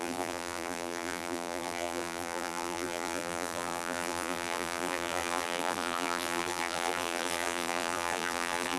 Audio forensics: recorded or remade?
remade